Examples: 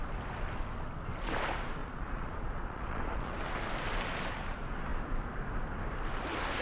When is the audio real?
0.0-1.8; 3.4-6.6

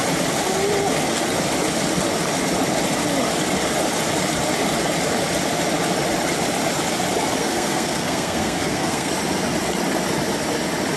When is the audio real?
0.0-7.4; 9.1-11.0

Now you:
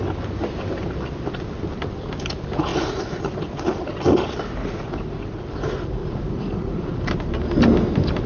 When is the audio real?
0.0-2.7; 3.2-4.6; 5.2-6.0; 6.9-8.3

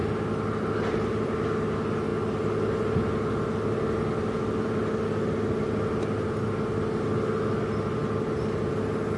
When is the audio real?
0.0-9.2

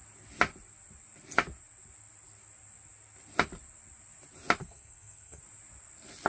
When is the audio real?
0.0-4.6; 5.4-6.3